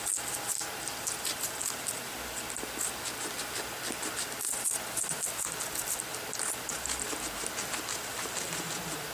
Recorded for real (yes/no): yes